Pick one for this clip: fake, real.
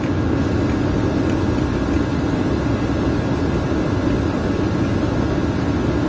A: real